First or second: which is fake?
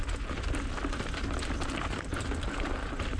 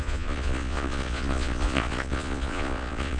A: second